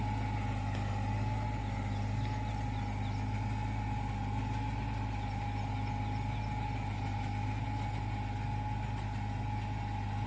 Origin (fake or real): real